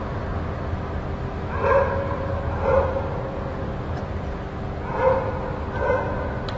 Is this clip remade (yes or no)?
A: no